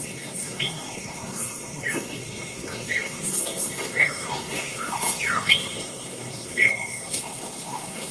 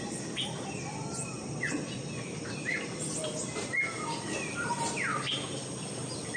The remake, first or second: first